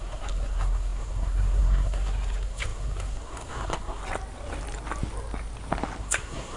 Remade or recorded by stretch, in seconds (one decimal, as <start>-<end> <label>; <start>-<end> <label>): 0.0-4.0 remade; 4.0-6.0 recorded; 6.0-6.6 remade